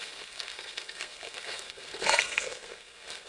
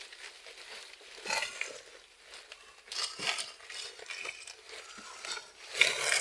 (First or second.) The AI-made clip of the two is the first